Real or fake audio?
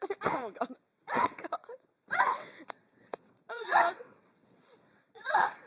fake